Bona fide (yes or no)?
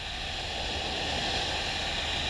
yes